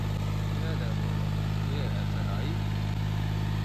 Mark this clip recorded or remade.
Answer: recorded